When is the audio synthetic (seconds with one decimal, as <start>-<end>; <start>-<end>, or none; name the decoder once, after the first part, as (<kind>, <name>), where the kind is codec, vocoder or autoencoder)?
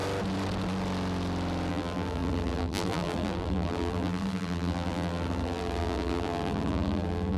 1.7-7.4 (vocoder, BigVGAN v2)